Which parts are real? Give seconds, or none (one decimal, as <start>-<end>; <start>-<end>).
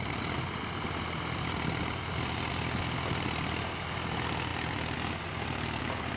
0.0-6.2